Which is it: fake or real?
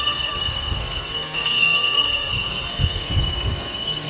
fake